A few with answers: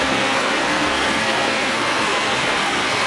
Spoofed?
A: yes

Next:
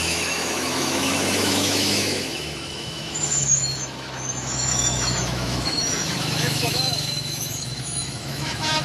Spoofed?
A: yes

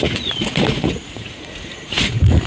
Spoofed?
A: yes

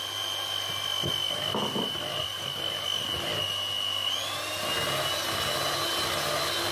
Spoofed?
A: no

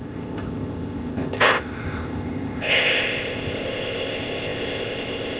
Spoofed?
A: yes